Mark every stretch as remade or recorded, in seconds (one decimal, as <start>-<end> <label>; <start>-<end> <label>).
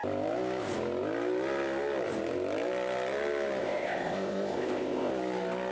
0.0-3.6 recorded; 3.6-5.1 remade; 5.1-5.7 recorded